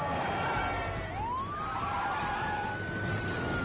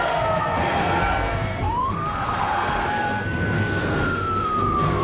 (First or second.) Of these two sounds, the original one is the first